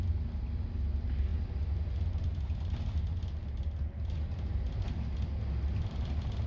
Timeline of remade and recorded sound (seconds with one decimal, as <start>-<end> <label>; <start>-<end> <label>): 0.0-3.4 recorded; 3.4-4.1 remade; 4.1-6.5 recorded